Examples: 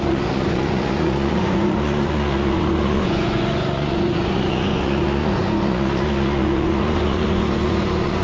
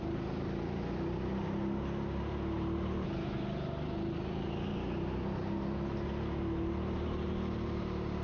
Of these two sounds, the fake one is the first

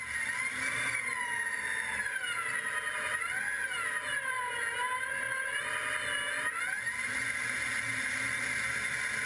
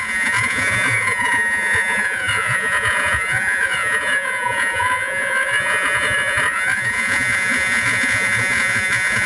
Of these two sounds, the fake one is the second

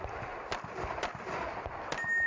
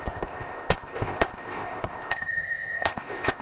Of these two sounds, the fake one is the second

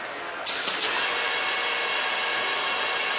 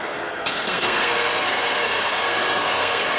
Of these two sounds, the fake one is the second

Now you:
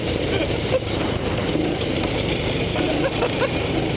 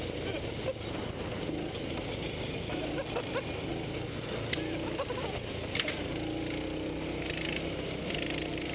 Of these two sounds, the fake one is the first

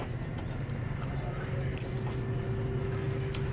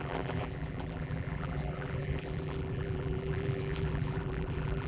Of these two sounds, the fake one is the second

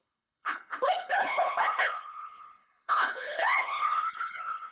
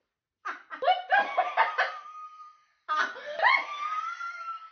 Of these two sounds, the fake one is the first